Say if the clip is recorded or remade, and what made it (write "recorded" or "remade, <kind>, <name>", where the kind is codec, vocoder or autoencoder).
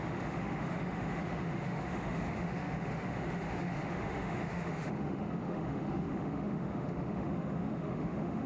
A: remade, autoencoder, DAC-VAE